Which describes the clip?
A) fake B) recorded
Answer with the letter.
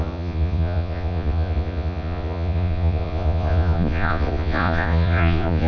A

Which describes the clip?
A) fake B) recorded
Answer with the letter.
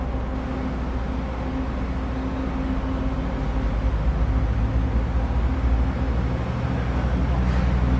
B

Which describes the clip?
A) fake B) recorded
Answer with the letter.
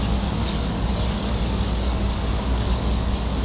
A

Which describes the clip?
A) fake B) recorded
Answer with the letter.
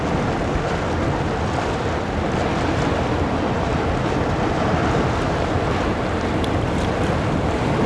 B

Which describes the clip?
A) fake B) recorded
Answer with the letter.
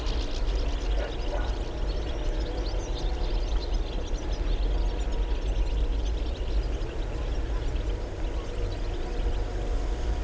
B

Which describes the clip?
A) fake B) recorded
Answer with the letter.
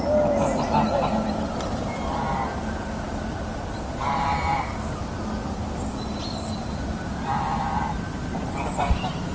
B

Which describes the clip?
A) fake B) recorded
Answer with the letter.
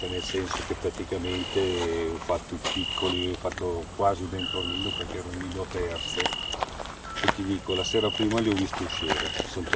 B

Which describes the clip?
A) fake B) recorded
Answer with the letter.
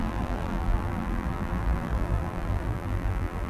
A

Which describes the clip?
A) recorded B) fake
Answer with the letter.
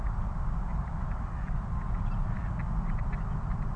A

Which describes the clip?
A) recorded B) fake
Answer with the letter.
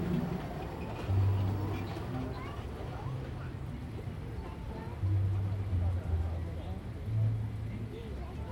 A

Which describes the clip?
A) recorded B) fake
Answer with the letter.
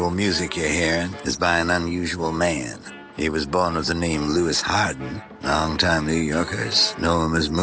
A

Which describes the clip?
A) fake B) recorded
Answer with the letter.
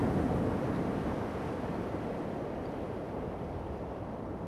B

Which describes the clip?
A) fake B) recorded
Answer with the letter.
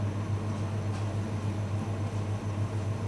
B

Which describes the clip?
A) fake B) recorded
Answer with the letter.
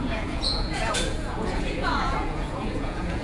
A